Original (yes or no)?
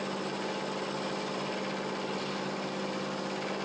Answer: yes